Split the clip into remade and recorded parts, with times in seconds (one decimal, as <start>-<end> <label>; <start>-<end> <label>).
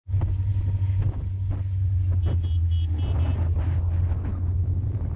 0.0-4.3 recorded; 4.3-5.2 remade